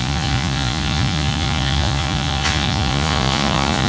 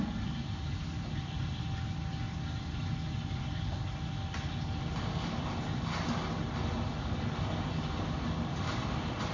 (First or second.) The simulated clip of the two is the first